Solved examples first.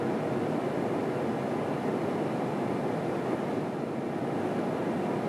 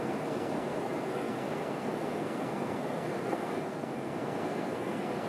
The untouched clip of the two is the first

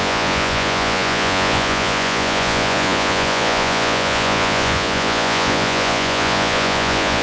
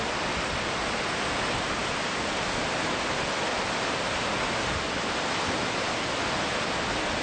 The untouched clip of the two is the second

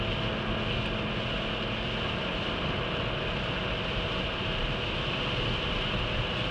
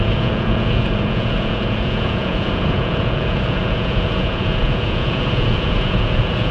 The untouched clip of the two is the first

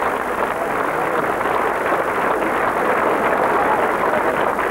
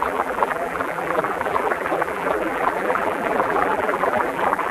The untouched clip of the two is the first